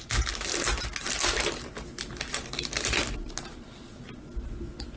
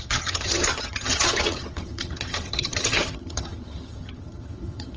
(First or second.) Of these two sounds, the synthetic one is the second